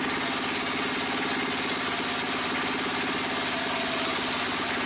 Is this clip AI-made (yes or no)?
no